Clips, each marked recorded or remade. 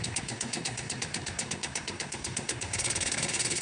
remade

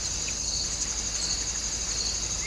recorded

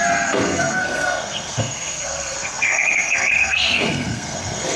remade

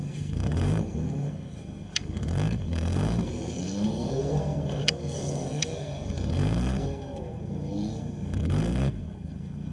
remade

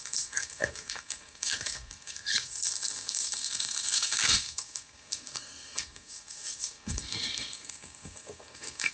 remade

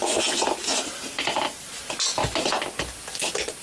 recorded